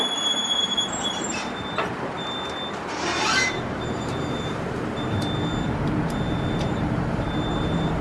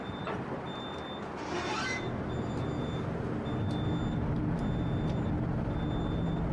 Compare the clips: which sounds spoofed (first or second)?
first